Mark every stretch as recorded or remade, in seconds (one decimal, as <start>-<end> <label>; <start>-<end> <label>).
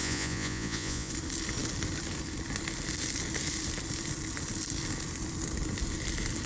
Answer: 0.0-1.1 remade; 1.1-6.5 recorded